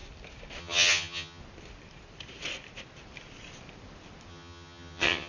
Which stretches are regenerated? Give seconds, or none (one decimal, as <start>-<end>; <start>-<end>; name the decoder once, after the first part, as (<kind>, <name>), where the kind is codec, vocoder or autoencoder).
0.6-1.4 (vocoder, HiFi-GAN); 4.3-5.3